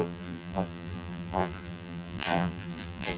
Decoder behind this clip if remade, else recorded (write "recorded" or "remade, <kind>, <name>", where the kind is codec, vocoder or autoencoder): remade, vocoder, BigVGAN v2